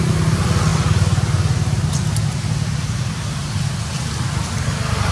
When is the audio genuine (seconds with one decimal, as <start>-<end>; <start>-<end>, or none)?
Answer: 0.0-5.1

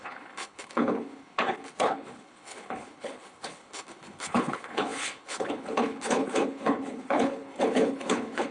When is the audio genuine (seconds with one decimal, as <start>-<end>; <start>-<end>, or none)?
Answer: none

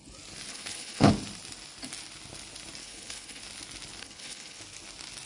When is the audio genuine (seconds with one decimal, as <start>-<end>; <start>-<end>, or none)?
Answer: 0.0-0.5; 1.1-2.8; 3.4-4.0; 4.6-5.3